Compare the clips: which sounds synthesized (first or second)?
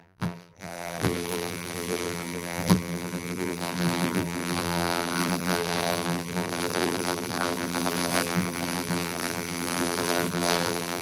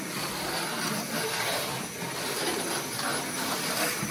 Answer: first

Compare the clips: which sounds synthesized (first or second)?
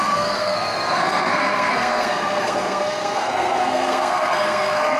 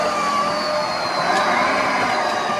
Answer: first